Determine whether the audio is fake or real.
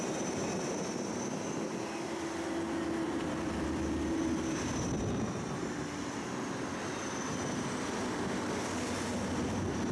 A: real